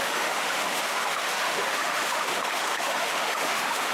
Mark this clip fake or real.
fake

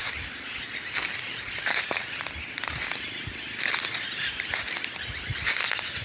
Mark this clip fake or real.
real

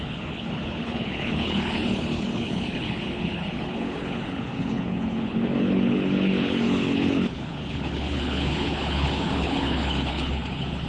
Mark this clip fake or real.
fake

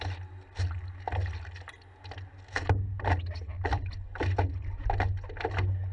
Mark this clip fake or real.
real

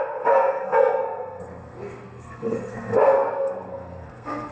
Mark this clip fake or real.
fake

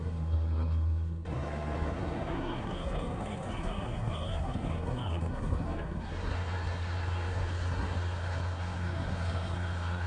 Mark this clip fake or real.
fake